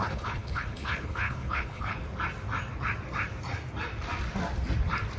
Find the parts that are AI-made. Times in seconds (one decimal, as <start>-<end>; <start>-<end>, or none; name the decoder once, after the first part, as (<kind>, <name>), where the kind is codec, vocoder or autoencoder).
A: 0.0-2.0 (codec, HILCodec)